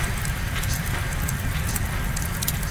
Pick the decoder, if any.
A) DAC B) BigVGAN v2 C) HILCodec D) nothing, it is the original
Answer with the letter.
D